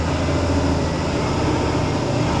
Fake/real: real